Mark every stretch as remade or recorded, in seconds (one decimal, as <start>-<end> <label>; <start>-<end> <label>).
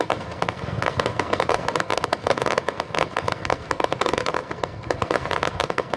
0.0-6.0 remade